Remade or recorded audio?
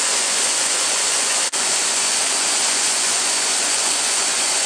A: remade